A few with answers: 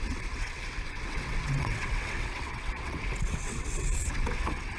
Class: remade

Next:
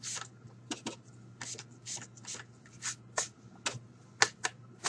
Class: recorded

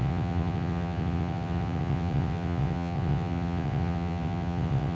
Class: remade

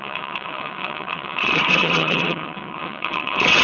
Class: remade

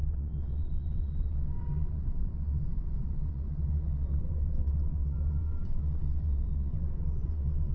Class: remade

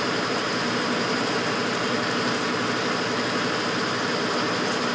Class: recorded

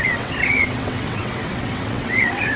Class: remade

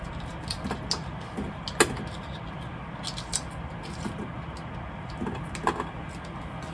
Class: recorded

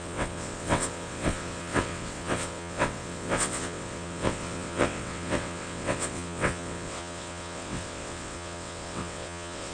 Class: remade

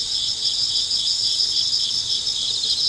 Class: remade